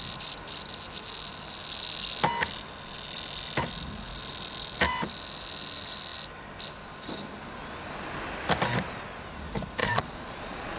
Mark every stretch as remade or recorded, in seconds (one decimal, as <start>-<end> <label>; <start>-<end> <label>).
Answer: 0.0-9.8 recorded; 9.8-10.8 remade